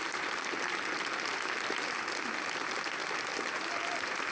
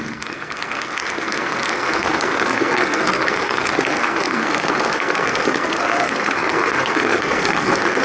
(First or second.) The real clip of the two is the first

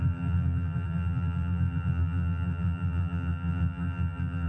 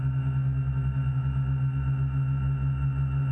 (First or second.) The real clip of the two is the second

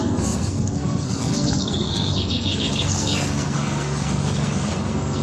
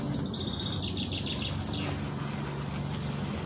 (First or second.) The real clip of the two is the second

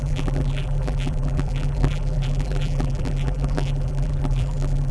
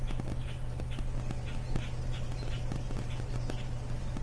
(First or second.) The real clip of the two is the second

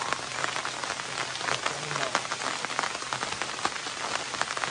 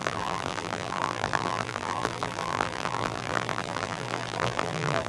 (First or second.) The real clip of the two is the first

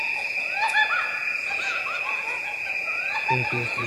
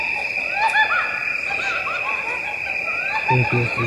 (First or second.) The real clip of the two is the second